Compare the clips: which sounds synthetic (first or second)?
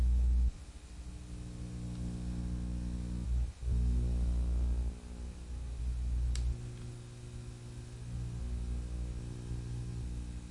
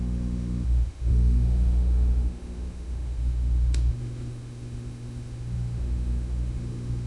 second